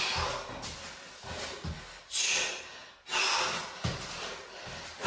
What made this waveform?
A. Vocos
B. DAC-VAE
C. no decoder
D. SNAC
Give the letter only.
C